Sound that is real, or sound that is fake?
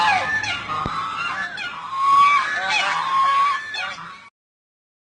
real